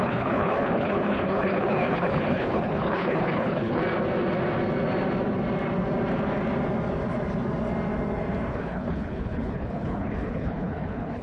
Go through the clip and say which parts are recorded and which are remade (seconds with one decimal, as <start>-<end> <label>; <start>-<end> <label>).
0.0-3.8 remade; 3.8-8.5 recorded; 8.5-11.2 remade